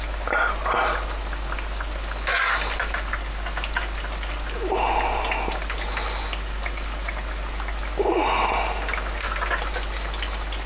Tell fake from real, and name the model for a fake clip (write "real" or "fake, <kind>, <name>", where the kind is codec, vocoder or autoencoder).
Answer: real